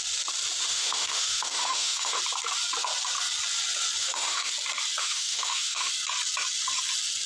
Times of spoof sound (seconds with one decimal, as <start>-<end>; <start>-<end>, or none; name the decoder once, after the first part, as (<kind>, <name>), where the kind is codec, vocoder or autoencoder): 0.7-2.2 (autoencoder, DAC-VAE); 4.0-4.5; 5.0-5.9